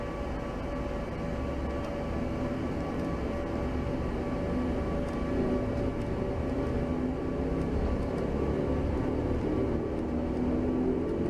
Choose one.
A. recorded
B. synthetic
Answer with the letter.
A